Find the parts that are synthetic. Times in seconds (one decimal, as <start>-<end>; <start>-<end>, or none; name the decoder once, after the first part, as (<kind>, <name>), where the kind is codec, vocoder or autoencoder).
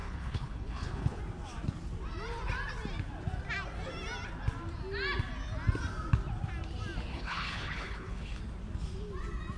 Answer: 0.0-1.2 (codec, HILCodec); 7.1-8.4